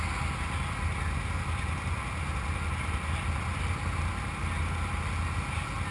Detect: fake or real real